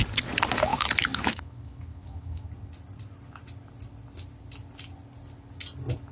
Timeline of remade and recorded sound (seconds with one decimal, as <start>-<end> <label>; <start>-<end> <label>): 0.0-0.7 recorded; 0.7-2.5 remade; 2.5-6.1 recorded